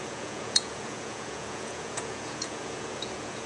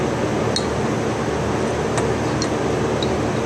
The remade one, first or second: first